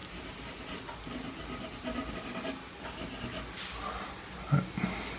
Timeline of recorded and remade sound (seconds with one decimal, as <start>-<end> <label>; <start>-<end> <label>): 0.0-5.2 recorded